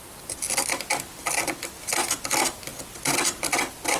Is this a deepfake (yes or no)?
no